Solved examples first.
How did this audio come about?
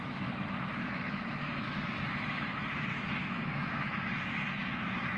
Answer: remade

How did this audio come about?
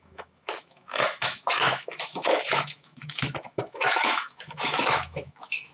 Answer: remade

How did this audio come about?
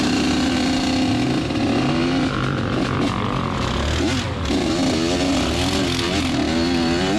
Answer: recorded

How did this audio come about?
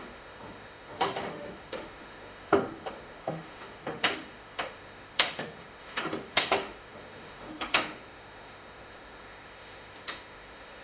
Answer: remade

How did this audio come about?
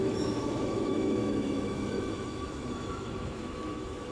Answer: remade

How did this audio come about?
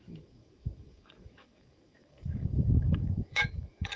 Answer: remade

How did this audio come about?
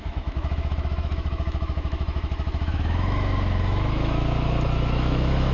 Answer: remade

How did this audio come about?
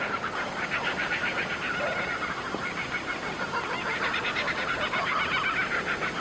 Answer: recorded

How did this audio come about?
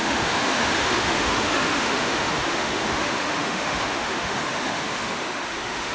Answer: remade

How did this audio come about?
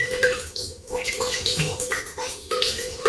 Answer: remade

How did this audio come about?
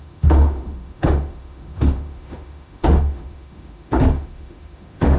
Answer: remade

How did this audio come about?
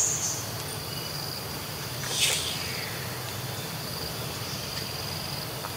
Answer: recorded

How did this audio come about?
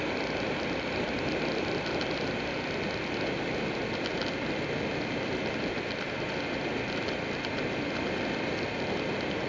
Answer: recorded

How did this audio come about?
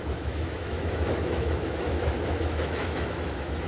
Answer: remade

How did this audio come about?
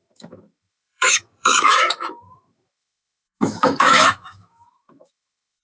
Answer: remade